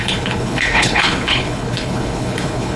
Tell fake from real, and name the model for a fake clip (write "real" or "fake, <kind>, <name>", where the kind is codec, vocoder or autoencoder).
fake, codec, HILCodec